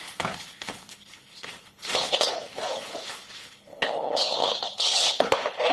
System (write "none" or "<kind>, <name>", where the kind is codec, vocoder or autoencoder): codec, HILCodec